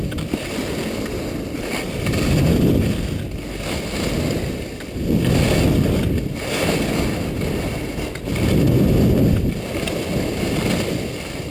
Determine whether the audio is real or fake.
real